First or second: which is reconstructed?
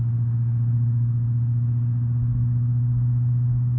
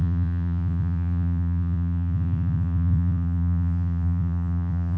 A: second